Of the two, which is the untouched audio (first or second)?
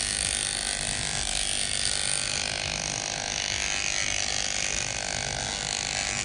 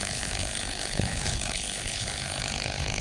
first